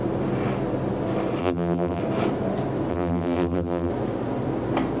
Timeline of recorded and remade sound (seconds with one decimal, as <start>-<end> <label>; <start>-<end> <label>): 0.0-1.4 recorded; 1.4-2.0 remade; 2.0-2.9 recorded; 2.9-3.9 remade; 3.9-5.0 recorded